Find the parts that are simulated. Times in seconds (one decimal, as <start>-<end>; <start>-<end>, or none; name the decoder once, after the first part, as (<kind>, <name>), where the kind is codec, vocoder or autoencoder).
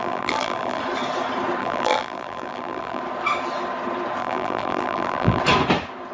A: 0.0-0.8 (vocoder, BigVGAN v2); 1.6-3.0; 4.2-5.4